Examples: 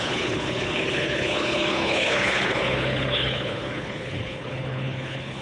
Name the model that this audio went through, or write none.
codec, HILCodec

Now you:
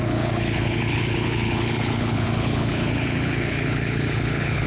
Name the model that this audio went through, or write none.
codec, HILCodec